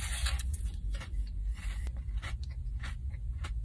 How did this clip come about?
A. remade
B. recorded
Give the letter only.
A